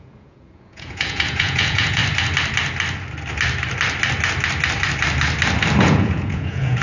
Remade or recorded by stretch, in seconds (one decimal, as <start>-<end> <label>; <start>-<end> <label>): 0.0-2.0 remade; 2.0-5.8 recorded; 5.8-6.8 remade